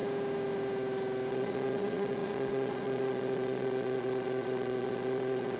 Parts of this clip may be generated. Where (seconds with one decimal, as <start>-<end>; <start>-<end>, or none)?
1.3-5.6